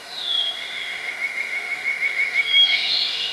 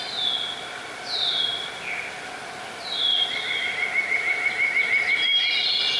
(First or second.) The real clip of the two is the second